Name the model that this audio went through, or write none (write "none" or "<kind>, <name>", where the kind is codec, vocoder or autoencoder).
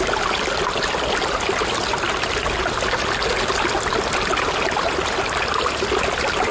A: none